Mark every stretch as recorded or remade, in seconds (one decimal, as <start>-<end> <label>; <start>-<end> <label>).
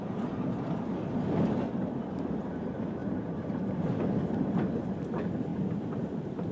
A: 0.0-3.0 recorded; 3.0-4.4 remade; 4.4-5.5 recorded; 5.5-6.5 remade